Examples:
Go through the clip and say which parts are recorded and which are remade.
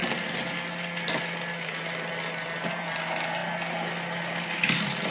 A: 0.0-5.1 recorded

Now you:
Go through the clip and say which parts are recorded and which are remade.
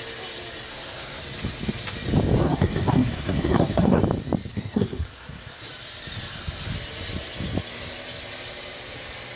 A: 0.0-0.7 recorded; 0.7-1.2 remade; 1.2-2.4 recorded; 2.4-4.0 remade; 4.0-4.5 recorded; 4.5-5.6 remade; 5.6-9.4 recorded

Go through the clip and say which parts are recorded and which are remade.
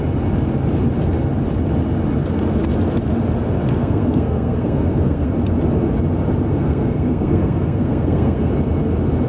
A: 0.0-3.8 recorded; 3.8-5.3 remade; 5.3-6.5 recorded; 6.5-8.5 remade; 8.5-9.3 recorded